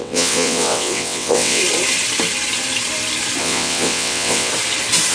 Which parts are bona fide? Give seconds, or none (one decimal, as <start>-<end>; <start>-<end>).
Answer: 1.6-3.4; 4.5-5.1